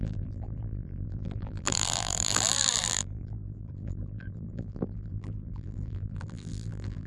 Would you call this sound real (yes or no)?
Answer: no